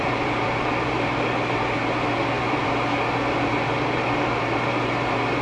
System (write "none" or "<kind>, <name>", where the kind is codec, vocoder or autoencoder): vocoder, BigVGAN v2